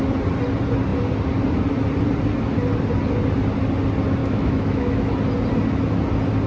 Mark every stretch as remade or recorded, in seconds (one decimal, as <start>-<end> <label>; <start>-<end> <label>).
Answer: 0.0-4.2 recorded; 4.2-5.1 remade; 5.1-6.5 recorded